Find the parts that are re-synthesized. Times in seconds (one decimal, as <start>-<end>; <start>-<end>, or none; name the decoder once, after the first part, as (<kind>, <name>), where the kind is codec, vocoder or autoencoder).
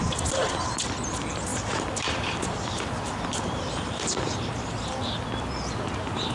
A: 1.5-5.0 (vocoder, BigVGAN v2)